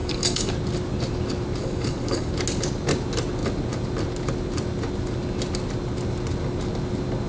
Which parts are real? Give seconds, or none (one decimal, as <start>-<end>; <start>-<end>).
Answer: 0.5-1.6; 2.3-7.3